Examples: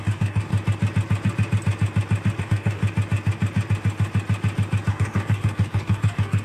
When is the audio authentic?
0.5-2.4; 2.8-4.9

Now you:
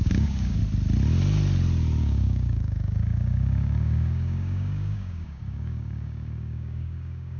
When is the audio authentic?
0.6-2.0

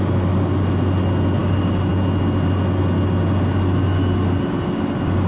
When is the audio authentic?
0.0-1.4; 1.9-5.3

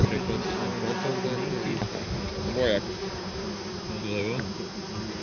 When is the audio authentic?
0.0-5.2

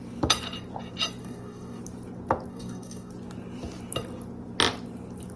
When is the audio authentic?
0.0-1.2; 1.8-2.5; 3.1-5.4